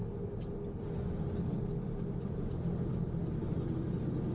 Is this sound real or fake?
real